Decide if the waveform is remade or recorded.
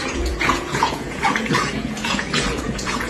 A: remade